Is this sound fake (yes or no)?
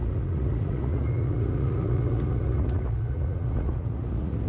yes